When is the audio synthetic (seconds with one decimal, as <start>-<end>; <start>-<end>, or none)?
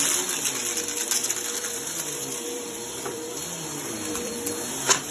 1.2-4.3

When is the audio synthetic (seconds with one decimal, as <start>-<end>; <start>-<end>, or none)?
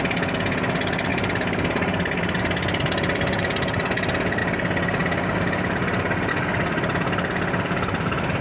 1.1-2.4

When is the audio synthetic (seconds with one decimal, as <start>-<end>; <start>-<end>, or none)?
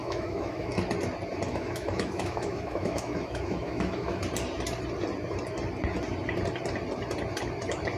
0.0-0.7; 1.5-4.2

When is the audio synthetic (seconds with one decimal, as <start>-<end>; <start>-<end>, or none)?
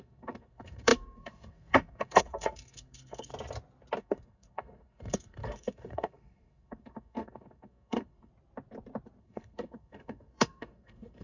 0.0-3.3; 4.0-8.3; 9.2-11.2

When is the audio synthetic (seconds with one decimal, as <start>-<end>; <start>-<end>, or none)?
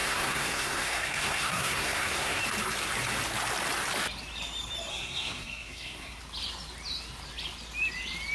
0.0-2.4; 4.9-6.2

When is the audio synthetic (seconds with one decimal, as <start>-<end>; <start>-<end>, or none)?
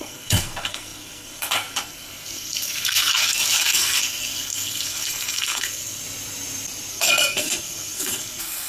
0.0-6.0; 6.9-8.7